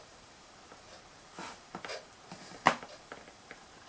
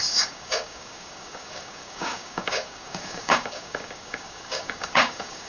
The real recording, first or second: first